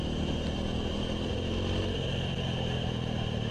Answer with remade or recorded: recorded